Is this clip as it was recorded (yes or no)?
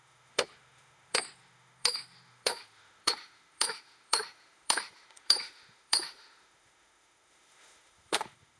no